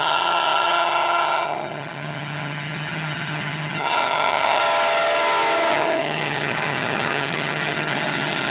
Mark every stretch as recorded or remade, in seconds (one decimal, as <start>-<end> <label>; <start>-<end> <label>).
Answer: 0.0-4.6 remade; 4.6-5.7 recorded; 5.7-8.5 remade